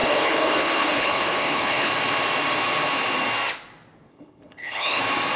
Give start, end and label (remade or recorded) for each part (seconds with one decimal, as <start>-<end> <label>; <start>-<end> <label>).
0.0-1.9 remade; 1.9-4.1 recorded; 4.1-5.0 remade; 5.0-5.4 recorded